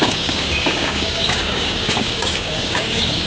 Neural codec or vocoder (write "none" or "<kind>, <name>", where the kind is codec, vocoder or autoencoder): codec, DAC